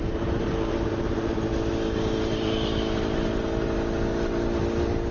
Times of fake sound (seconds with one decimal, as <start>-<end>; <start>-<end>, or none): none